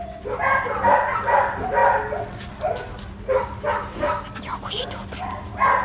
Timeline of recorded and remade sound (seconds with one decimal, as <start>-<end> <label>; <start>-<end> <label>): 0.0-5.8 recorded